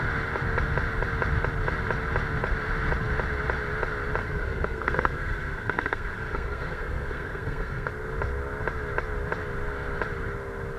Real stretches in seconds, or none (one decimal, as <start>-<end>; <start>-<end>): 0.0-4.2; 7.9-10.8